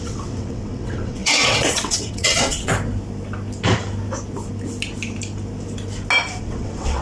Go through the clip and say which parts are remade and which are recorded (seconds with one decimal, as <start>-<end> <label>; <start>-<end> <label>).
0.0-2.7 remade; 2.7-6.4 recorded; 6.4-7.0 remade